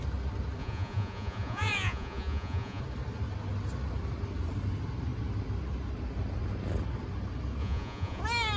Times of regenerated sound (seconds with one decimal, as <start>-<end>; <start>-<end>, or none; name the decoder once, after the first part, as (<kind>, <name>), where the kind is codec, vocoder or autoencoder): 0.6-2.8 (vocoder, Vocos); 7.6-8.2